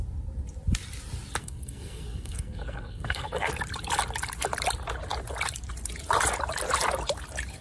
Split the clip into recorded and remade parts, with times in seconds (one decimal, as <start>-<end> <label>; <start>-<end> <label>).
0.0-1.4 recorded; 1.4-3.5 remade; 3.5-7.6 recorded